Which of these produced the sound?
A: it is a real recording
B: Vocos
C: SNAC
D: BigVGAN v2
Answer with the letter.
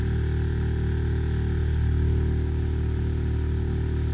A